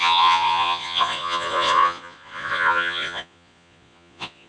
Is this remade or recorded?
remade